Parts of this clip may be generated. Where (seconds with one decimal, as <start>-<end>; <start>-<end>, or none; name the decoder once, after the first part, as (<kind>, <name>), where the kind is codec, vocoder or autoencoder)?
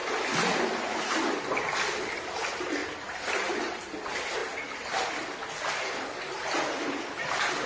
none